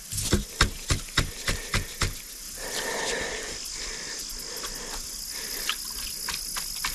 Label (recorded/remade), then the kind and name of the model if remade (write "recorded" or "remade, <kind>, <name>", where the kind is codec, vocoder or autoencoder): recorded